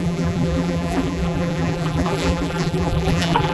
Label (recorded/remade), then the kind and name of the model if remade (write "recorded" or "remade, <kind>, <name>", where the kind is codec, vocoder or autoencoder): remade, vocoder, BigVGAN v2